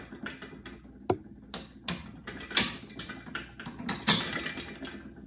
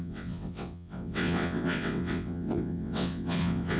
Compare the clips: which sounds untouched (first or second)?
first